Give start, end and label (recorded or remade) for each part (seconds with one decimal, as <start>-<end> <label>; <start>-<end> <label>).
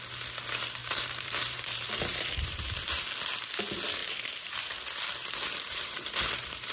0.0-0.8 recorded; 0.8-3.0 remade; 3.0-4.0 recorded; 4.0-4.7 remade; 4.7-5.2 recorded; 5.2-6.7 remade